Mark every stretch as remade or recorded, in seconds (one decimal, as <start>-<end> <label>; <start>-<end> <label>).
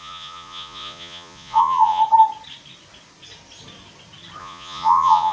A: 0.0-2.0 remade; 2.0-4.4 recorded; 4.4-5.3 remade